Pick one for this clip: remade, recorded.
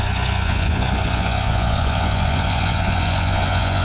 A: remade